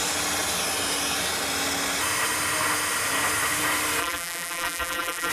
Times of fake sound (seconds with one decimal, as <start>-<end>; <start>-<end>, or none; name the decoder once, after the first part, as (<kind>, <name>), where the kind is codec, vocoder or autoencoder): 4.0-5.3 (vocoder, BigVGAN v2)